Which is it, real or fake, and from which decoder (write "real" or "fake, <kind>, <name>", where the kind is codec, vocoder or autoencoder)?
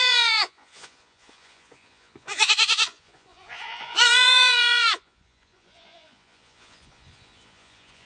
fake, vocoder, Vocos